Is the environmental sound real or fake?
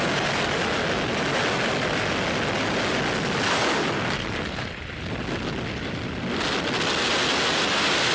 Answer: real